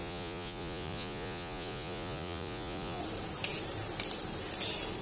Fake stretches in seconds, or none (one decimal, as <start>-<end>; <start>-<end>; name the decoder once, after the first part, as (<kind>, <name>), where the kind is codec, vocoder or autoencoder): 0.0-3.0 (vocoder, Vocos)